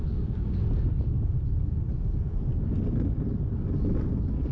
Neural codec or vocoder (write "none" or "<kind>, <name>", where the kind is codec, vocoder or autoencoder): none